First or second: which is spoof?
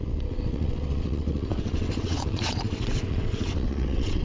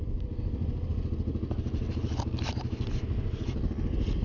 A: first